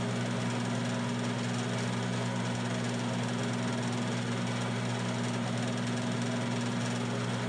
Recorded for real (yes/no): yes